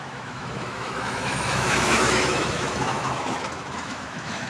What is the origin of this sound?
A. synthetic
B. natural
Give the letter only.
A